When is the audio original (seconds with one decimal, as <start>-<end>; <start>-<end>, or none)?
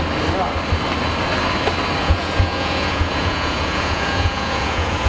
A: 0.0-2.0